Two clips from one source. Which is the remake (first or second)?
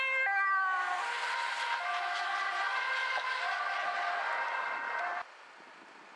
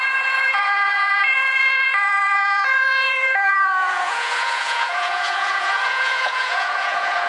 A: second